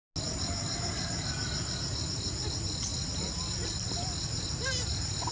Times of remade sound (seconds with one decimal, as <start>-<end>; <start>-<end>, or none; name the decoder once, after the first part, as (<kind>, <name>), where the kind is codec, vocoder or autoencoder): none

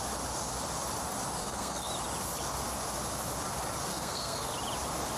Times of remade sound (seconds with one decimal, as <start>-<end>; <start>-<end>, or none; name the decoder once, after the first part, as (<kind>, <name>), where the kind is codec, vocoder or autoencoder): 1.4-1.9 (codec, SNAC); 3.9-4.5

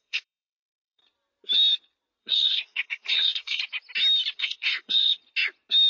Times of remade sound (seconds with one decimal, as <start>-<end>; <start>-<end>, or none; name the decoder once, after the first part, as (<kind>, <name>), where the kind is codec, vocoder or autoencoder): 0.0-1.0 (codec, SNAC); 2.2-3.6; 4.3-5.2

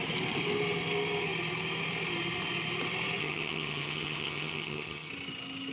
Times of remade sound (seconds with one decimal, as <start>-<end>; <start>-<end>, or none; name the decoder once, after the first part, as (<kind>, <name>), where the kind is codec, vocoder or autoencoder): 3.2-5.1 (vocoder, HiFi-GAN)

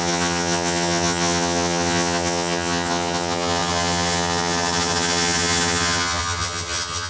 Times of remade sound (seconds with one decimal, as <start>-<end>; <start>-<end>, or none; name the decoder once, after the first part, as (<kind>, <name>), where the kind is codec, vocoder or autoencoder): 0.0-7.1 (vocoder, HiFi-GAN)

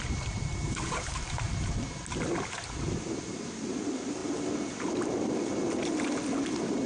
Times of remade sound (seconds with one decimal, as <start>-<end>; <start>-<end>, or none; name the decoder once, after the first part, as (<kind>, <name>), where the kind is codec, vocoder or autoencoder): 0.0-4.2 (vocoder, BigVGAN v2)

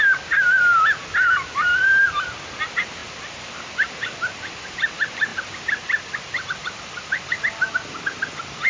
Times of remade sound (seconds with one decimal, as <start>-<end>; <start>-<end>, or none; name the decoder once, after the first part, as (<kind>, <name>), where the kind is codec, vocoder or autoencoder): none